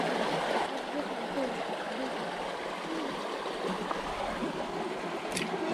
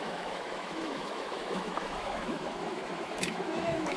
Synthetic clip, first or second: second